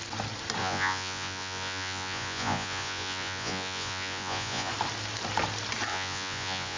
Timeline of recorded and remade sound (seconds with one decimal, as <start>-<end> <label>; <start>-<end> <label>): 0.0-0.6 recorded; 0.6-4.7 remade; 4.7-5.9 recorded; 5.9-6.8 remade